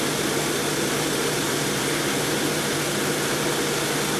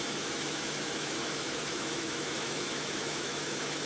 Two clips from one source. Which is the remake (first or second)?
second